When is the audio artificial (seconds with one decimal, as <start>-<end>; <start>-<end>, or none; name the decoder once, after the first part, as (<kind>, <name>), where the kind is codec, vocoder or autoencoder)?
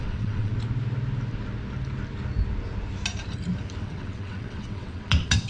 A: 0.0-0.5 (vocoder, WaveNeXt); 3.8-5.5